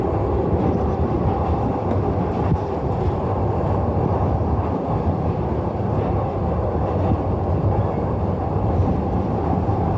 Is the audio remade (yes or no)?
no